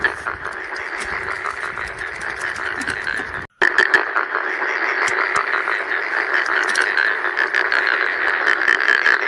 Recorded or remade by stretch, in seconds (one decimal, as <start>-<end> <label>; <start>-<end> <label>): 0.0-9.3 recorded